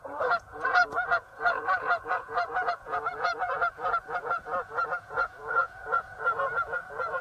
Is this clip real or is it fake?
fake